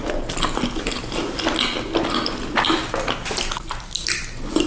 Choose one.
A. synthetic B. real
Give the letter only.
B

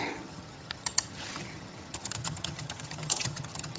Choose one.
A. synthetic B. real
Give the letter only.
A